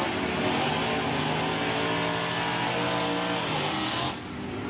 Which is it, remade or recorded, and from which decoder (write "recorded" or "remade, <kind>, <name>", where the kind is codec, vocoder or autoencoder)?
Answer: recorded